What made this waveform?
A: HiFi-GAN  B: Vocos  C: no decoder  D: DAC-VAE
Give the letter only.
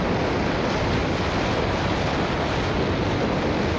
C